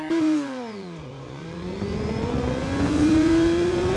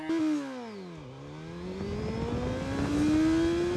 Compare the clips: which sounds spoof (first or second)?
first